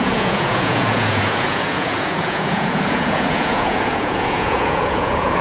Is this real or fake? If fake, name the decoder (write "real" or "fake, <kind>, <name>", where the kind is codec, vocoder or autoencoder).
fake, vocoder, Vocos